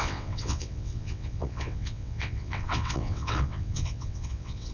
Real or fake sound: fake